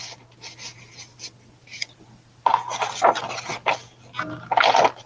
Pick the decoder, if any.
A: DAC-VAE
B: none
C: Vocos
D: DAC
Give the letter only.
B